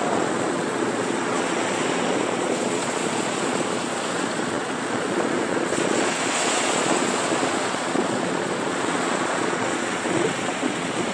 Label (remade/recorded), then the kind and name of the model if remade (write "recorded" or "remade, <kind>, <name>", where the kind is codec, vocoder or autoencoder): remade, vocoder, Vocos